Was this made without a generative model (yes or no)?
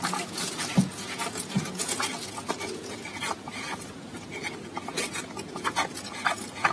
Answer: no